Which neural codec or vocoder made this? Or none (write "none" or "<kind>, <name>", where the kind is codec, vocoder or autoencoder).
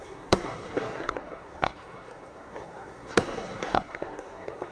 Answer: codec, SNAC